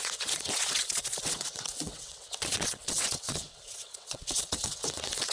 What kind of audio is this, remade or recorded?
remade